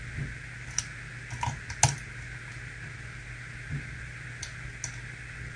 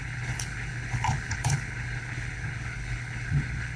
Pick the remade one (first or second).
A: second